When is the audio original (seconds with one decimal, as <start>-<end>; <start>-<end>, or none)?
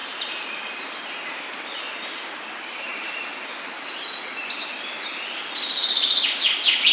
0.0-1.9; 2.9-6.9